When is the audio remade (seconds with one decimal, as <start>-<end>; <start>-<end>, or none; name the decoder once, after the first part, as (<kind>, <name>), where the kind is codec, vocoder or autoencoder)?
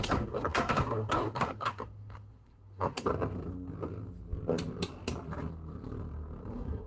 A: 0.0-3.1 (codec, SNAC); 6.5-6.9